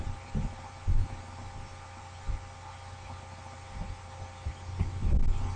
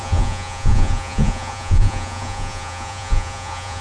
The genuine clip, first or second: first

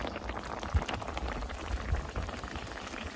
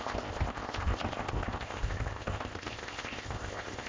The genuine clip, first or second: first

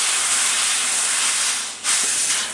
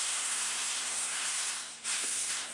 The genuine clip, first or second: first